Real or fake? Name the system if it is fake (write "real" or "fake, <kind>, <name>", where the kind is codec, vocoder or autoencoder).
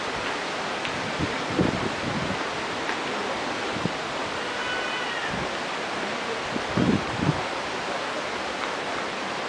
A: real